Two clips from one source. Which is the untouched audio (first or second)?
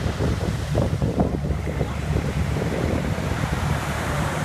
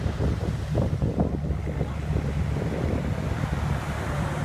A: second